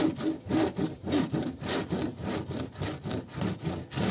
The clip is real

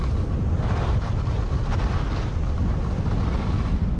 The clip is real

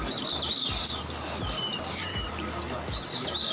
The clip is real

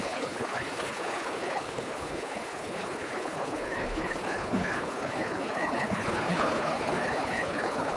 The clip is fake